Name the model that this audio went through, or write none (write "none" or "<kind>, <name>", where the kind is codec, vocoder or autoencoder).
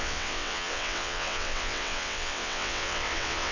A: vocoder, WaveNeXt